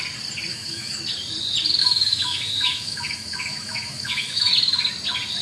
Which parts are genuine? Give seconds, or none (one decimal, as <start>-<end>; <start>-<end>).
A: 0.0-0.5; 1.0-1.8; 4.5-5.4